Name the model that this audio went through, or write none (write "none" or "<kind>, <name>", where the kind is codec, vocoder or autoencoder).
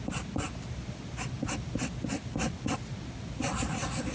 none